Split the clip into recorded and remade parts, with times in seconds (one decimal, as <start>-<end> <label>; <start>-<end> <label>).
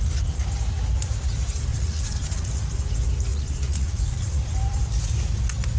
0.0-1.7 recorded; 1.7-2.6 remade; 2.6-3.3 recorded; 3.3-4.4 remade; 4.4-5.8 recorded